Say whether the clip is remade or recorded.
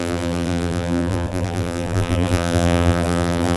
remade